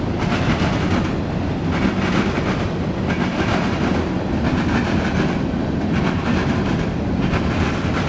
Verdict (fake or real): real